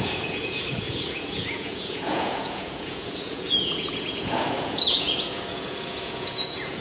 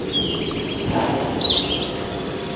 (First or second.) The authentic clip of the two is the second